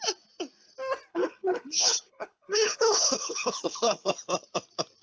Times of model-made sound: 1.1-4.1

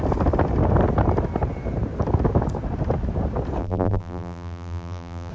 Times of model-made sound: 3.6-5.3

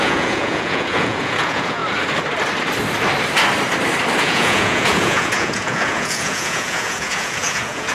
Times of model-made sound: 0.0-1.8; 4.2-7.9

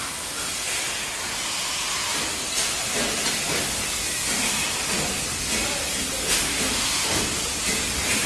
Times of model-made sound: 6.3-7.2